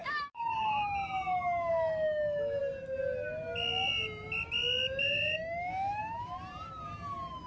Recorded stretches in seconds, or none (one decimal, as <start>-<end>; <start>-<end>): 2.6-5.0; 6.0-7.5